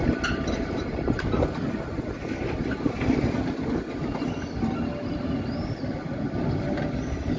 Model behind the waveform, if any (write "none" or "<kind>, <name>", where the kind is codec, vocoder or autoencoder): none